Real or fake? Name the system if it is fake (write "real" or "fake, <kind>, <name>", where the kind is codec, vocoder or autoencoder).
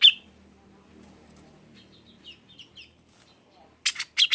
real